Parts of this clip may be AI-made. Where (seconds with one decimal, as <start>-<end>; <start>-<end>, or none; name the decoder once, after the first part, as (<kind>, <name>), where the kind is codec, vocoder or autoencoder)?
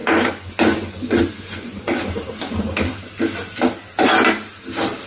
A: 0.0-2.0 (vocoder, Vocos)